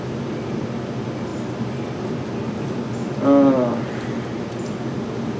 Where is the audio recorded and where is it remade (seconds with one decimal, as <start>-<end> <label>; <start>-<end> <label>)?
0.0-1.3 recorded; 1.3-2.2 remade; 2.2-5.4 recorded